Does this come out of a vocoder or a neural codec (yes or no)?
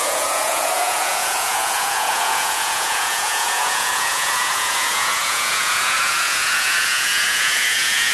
yes